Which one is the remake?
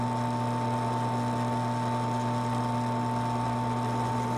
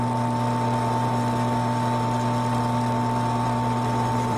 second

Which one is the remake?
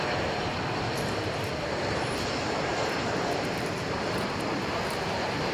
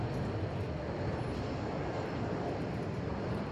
first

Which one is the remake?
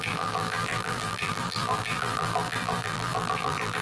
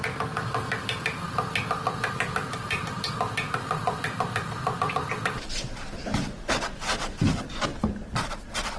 first